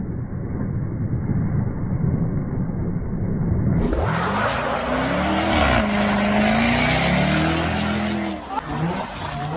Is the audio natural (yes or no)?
yes